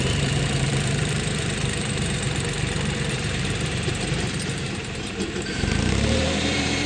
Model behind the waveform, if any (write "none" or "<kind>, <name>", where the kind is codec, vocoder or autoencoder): vocoder, BigVGAN v2